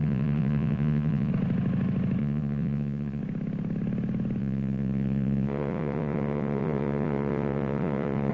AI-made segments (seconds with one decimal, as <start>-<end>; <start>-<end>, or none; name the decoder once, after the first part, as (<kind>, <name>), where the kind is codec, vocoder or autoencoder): 0.0-1.3 (vocoder, Vocos); 2.2-3.2; 4.4-8.3

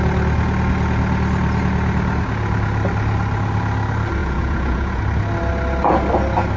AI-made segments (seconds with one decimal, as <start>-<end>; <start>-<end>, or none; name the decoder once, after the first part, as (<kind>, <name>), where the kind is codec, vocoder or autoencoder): 4.2-5.0 (vocoder, Vocos)

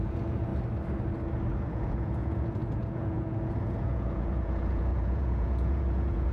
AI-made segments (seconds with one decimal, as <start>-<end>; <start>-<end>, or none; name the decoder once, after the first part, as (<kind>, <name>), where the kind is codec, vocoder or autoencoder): 0.0-0.5 (vocoder, Vocos); 1.5-6.3

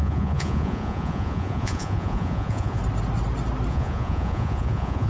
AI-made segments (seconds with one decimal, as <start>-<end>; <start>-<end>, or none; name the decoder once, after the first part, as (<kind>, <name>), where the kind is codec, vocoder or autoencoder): 0.0-2.8 (vocoder, Vocos); 3.7-5.1

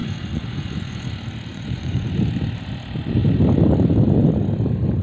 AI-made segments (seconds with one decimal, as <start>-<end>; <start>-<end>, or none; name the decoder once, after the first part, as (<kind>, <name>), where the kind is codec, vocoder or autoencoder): 0.0-1.1 (vocoder, Vocos); 1.5-2.1

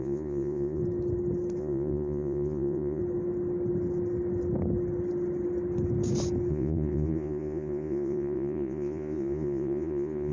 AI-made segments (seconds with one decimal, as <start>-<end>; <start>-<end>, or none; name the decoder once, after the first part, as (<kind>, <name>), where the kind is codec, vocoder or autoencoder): 0.0-0.8 (vocoder, Vocos); 1.6-3.0; 6.5-10.3